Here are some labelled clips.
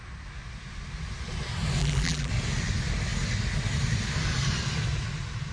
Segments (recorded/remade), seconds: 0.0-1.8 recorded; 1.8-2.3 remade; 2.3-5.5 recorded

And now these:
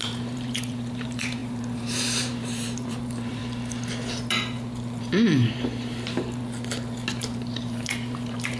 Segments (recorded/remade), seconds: 0.0-3.4 remade; 3.4-5.0 recorded; 5.0-6.4 remade; 6.4-7.2 recorded; 7.2-8.6 remade

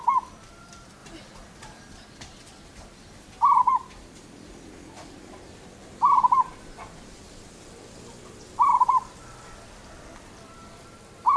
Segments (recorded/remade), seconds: 0.0-11.4 remade

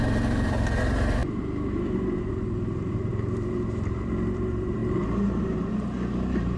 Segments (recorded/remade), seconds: 0.0-6.6 remade

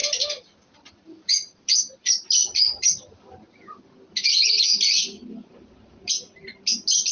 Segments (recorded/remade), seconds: 0.0-3.8 remade; 3.8-5.0 recorded; 5.0-5.5 remade; 5.5-7.1 recorded

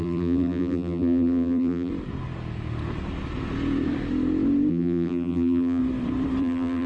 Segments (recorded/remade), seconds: 0.0-1.9 remade; 1.9-4.7 recorded; 4.7-5.8 remade; 5.8-6.4 recorded; 6.4-6.9 remade